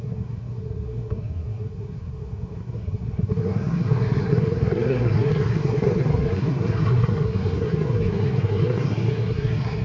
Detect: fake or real fake